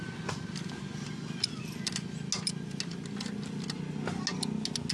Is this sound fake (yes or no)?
no